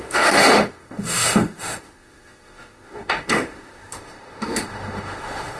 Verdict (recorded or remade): remade